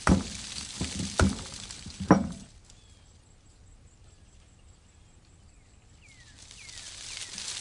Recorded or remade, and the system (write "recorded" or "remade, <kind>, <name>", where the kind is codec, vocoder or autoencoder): recorded